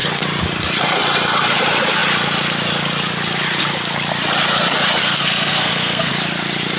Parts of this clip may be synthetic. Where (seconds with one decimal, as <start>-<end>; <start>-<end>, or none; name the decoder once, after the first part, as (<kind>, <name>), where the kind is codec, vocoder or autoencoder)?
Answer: 5.0-6.1 (codec, SNAC)

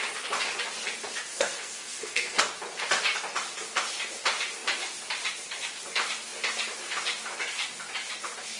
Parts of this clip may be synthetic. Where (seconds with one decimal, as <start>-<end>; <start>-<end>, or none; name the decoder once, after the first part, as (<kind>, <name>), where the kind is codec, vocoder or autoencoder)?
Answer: 1.3-2.4 (codec, SNAC)

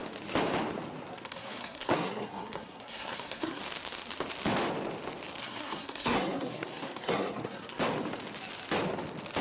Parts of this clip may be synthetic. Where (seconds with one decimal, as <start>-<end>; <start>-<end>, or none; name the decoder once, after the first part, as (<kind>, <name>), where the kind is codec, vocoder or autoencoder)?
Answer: 1.1-3.6 (codec, SNAC); 5.4-7.8

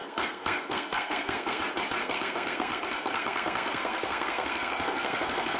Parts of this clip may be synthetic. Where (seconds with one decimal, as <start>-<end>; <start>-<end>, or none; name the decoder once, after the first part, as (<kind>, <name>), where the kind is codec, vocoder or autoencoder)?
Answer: 0.0-1.6 (codec, SNAC); 2.0-5.6

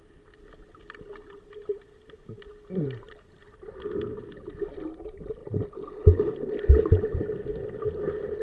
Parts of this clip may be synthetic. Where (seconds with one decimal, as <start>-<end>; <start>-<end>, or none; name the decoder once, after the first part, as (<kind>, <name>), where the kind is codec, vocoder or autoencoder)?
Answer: none

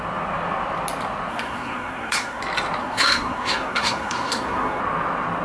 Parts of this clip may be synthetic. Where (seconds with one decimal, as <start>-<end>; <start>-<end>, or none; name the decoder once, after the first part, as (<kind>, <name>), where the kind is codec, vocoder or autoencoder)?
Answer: 1.3-2.4 (codec, SNAC); 2.8-4.8

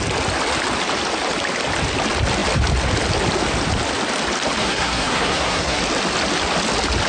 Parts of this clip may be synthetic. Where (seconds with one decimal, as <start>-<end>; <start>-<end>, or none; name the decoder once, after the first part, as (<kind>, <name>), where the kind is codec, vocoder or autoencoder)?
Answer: 4.6-5.8 (codec, SNAC)